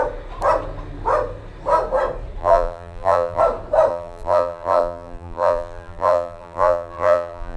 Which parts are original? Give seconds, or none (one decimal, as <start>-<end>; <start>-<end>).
0.0-2.4; 3.4-3.9